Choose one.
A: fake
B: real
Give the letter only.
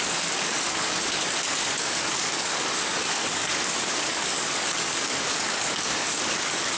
A